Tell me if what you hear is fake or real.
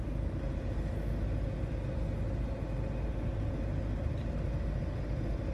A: real